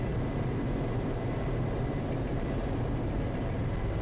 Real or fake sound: fake